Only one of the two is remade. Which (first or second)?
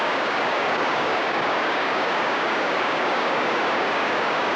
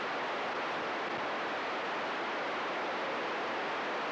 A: first